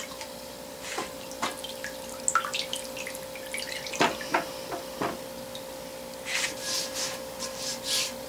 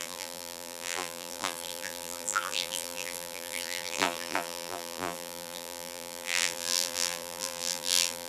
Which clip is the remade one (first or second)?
second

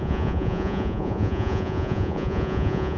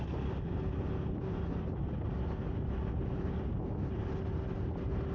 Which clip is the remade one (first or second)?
first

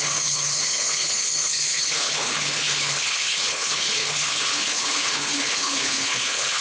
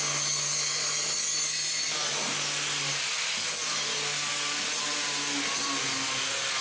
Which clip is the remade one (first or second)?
first